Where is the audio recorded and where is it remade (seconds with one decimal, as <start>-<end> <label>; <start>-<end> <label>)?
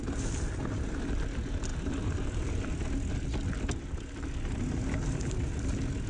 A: 0.0-6.1 recorded